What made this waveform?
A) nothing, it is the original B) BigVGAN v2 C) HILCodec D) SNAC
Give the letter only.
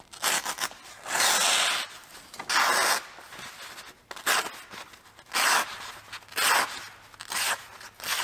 A